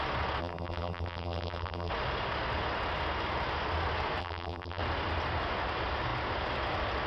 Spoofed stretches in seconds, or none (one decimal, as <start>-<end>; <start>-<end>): 0.4-1.9; 4.2-4.8